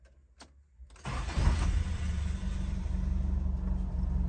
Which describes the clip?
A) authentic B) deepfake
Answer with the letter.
A